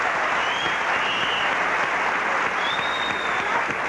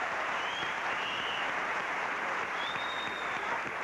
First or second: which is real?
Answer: first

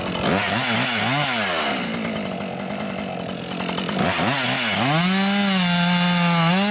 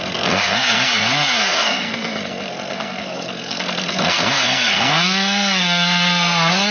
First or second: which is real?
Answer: first